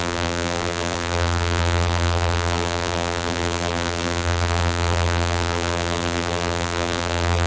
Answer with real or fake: fake